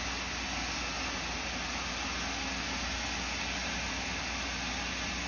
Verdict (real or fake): real